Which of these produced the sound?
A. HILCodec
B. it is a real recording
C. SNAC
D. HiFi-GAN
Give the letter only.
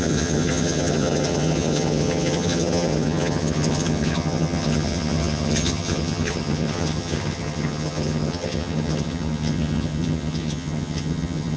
D